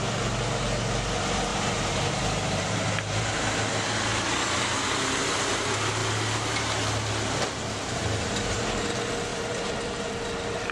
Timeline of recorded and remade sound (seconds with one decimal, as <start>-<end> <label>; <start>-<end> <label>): 0.0-1.5 recorded; 1.5-3.3 remade; 3.3-9.3 recorded; 9.3-10.7 remade